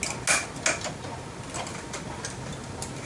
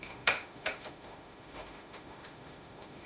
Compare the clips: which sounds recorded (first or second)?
first